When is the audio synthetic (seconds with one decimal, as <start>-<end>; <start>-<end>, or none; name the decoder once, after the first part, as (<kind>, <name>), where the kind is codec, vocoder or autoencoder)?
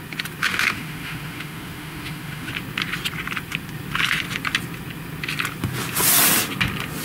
0.4-2.5 (autoencoder, DAC-VAE)